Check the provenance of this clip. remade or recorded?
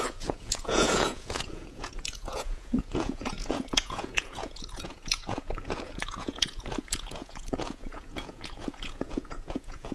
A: remade